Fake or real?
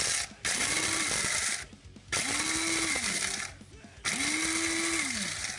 real